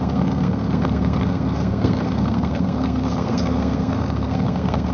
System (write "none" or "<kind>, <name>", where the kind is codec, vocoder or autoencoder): codec, SNAC